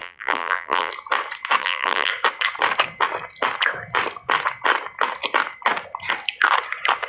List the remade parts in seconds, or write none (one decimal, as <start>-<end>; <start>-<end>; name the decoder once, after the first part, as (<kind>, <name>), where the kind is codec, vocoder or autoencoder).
0.0-0.9 (vocoder, BigVGAN v2); 1.6-2.1